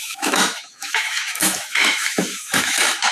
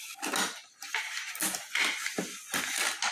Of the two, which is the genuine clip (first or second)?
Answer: second